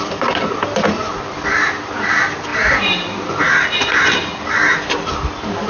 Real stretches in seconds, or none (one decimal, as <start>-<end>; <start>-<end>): 0.0-2.5; 5.3-5.7